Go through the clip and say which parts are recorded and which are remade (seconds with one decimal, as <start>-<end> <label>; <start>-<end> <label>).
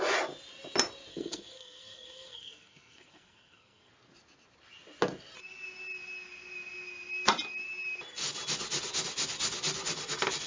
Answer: 0.0-1.1 recorded; 1.1-3.9 remade; 3.9-10.5 recorded